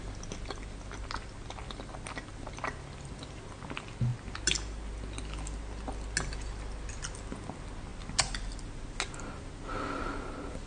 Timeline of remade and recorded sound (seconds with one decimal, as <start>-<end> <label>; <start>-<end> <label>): 0.0-10.7 recorded